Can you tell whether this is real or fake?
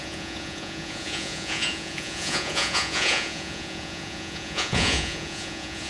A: fake